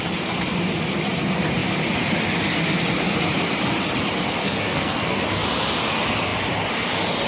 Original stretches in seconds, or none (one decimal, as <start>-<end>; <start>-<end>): 0.0-4.4; 5.2-7.3